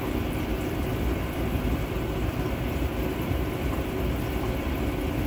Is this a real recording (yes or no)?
no